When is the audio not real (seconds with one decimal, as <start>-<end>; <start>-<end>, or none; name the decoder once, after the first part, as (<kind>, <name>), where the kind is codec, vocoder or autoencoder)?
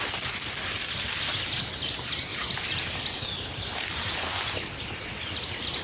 none